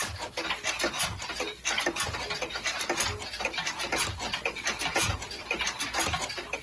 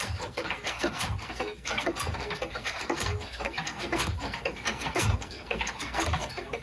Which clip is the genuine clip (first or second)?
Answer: first